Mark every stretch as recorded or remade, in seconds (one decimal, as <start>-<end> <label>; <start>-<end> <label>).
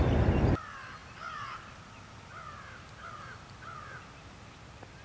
0.0-5.0 recorded